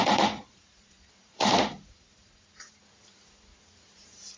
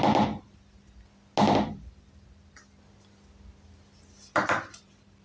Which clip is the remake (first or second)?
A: first